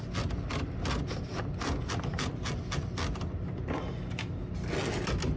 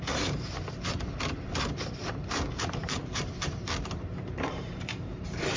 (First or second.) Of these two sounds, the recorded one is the first